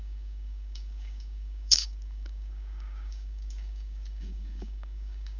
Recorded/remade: remade